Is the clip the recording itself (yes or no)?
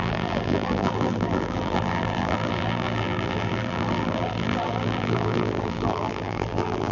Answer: no